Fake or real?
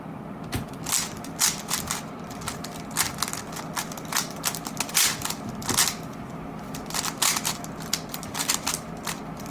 real